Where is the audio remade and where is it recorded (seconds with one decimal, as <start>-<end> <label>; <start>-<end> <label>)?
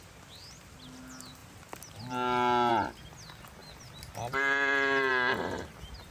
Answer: 0.0-3.6 recorded; 3.6-5.1 remade; 5.1-6.1 recorded